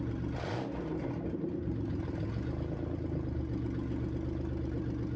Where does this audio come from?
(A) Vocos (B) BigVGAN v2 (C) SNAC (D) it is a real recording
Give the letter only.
D